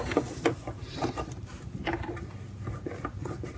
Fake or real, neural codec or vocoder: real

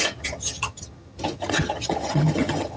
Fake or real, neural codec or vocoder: fake, vocoder, HiFi-GAN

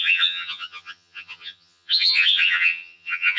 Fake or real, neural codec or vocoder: fake, vocoder, HiFi-GAN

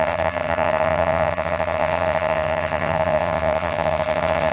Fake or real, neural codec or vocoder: fake, vocoder, HiFi-GAN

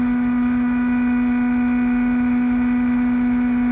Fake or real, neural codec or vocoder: real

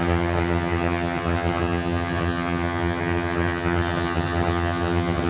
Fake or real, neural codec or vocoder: fake, vocoder, HiFi-GAN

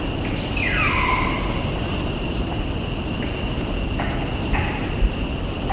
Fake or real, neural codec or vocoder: real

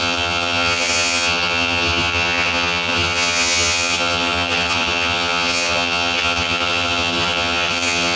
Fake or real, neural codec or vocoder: fake, vocoder, HiFi-GAN